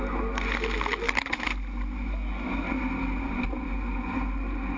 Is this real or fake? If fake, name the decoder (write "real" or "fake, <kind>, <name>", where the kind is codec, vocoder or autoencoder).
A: real